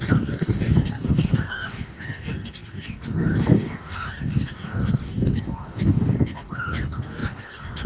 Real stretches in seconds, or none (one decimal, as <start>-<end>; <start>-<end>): none